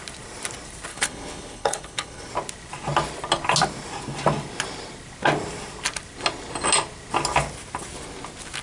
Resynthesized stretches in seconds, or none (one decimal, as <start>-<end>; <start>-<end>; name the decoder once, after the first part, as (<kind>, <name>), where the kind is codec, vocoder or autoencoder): 0.9-2.3 (codec, HILCodec)